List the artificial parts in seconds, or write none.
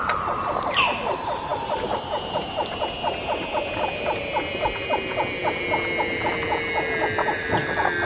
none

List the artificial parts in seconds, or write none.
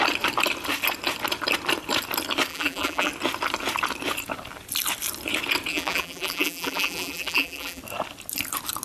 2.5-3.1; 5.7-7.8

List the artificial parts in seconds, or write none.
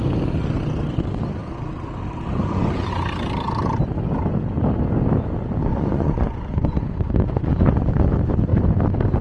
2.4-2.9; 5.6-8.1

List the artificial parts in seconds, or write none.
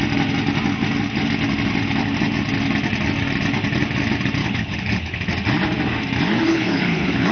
4.4-5.3; 6.5-7.3